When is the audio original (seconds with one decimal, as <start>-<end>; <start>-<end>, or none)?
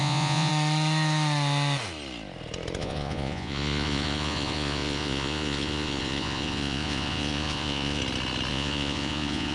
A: 0.5-2.8; 8.0-8.5